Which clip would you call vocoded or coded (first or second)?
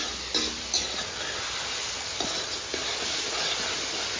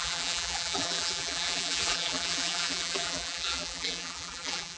second